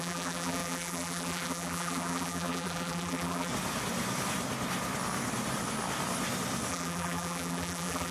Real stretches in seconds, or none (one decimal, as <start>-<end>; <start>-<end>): 3.5-6.7